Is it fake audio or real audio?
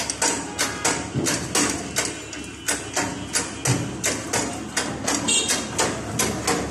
real